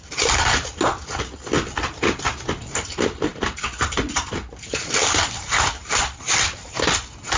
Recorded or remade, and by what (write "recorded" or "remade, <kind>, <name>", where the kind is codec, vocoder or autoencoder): recorded